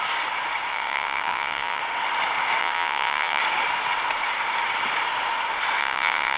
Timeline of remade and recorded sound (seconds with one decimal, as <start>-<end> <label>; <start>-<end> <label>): 0.0-0.7 recorded; 0.7-1.8 remade; 1.8-2.6 recorded; 2.6-3.4 remade; 3.4-5.8 recorded; 5.8-6.4 remade